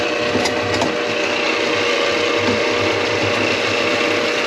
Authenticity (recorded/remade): recorded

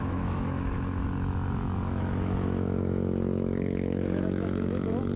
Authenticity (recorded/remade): remade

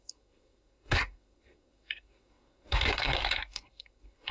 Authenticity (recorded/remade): remade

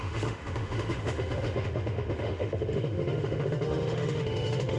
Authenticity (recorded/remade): remade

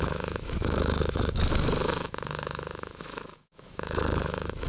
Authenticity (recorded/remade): remade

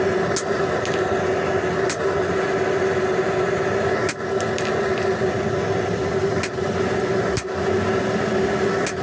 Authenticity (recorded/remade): recorded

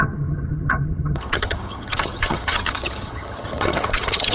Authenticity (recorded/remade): remade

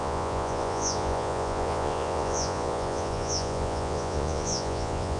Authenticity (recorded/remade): remade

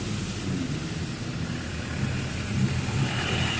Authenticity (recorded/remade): recorded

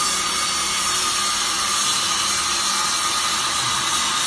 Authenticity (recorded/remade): recorded